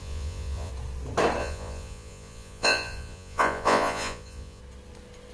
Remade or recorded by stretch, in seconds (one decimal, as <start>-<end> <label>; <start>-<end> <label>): 0.0-0.7 remade; 0.7-1.4 recorded; 1.4-4.6 remade; 4.6-5.3 recorded